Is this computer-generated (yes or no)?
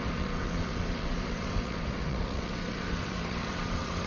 yes